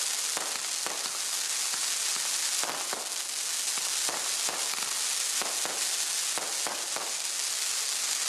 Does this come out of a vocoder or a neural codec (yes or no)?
no